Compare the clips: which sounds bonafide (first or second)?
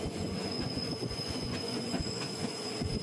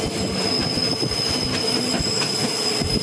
second